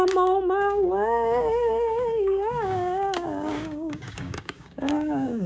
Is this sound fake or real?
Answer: fake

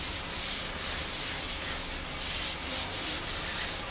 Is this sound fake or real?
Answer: real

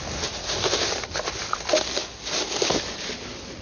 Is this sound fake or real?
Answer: real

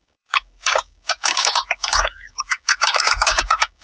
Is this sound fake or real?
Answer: fake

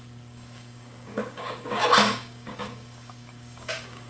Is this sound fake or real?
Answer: fake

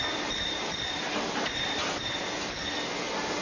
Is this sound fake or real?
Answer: real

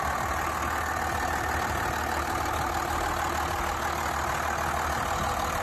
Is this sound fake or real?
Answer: real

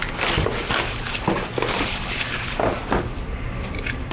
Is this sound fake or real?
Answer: real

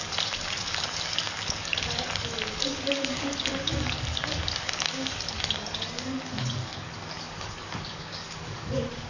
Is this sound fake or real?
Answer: fake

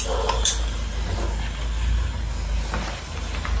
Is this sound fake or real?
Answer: real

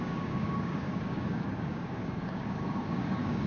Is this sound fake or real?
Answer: fake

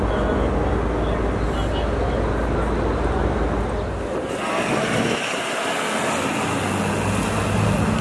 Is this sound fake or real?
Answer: real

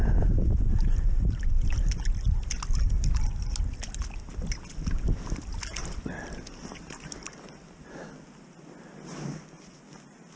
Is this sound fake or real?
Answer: real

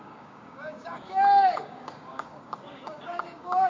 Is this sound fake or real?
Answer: fake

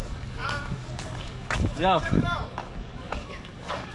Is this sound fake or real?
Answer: fake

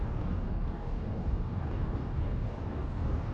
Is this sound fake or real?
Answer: fake